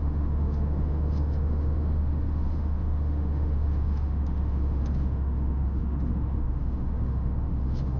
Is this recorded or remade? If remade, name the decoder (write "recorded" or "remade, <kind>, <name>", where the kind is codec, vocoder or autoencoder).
remade, autoencoder, DAC-VAE